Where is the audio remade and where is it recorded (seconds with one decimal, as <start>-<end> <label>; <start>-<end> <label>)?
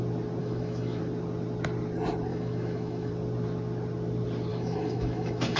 0.0-0.4 recorded; 0.4-1.0 remade; 1.0-2.3 recorded; 2.3-3.1 remade; 3.1-4.5 recorded; 4.5-5.6 remade